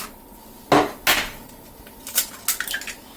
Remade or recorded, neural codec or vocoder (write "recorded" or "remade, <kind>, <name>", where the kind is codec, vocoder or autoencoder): recorded